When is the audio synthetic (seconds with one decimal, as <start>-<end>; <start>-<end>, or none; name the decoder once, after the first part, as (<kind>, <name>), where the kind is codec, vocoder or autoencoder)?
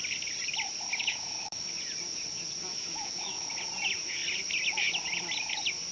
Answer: 1.0-1.7 (autoencoder, DAC-VAE); 2.7-3.6